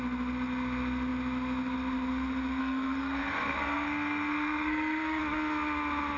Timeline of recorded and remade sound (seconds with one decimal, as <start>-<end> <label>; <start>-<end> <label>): 0.0-2.6 recorded; 2.6-5.2 remade; 5.2-6.2 recorded